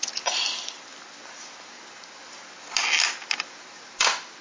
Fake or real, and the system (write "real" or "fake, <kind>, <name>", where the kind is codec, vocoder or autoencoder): real